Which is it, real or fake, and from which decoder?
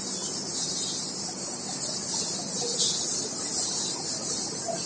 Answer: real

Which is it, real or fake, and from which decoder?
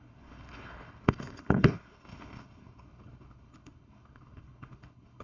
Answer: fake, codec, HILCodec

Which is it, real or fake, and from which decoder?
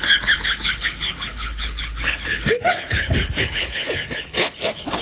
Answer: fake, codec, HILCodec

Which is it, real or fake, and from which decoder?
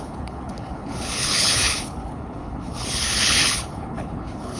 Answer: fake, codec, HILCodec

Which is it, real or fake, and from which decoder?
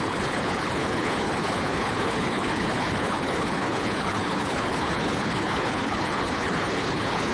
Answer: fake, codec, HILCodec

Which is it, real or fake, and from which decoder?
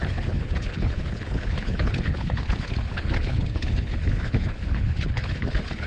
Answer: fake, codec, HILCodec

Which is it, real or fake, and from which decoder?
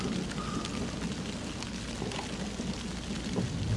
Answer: real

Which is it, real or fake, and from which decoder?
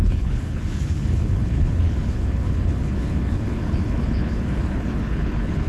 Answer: fake, codec, HILCodec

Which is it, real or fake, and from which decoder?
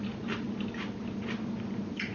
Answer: real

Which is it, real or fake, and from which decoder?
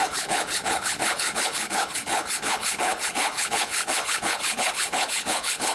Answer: fake, codec, HILCodec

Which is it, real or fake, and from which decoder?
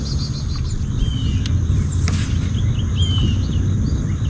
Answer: real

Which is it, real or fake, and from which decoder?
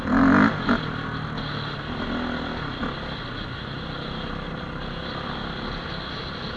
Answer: real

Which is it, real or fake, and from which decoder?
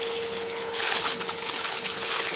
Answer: fake, codec, HILCodec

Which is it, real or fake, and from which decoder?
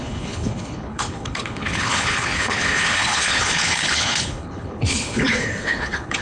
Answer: fake, codec, HILCodec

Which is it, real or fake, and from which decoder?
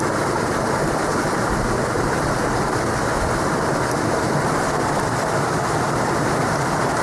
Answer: real